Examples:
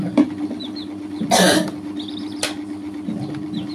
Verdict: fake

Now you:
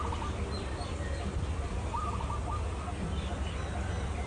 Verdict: real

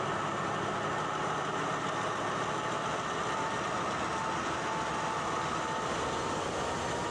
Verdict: real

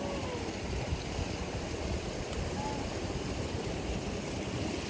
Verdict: real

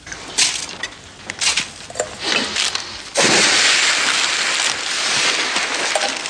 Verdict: real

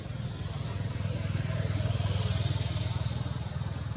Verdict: real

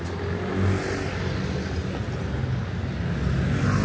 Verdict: real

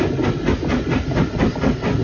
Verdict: real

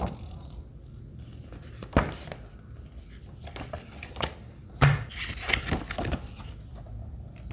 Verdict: real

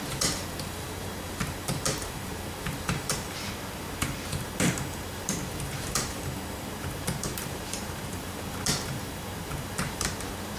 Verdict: fake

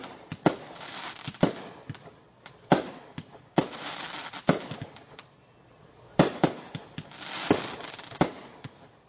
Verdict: real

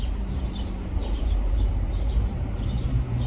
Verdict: fake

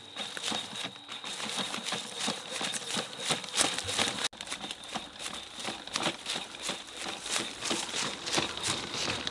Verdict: real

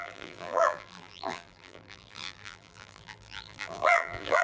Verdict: fake